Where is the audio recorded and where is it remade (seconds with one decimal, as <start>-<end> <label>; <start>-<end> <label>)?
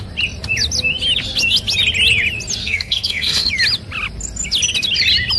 0.0-2.6 recorded; 2.6-3.5 remade; 3.5-5.4 recorded